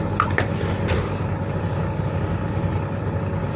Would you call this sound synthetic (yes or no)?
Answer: no